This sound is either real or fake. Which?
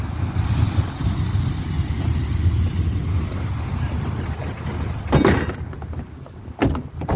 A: real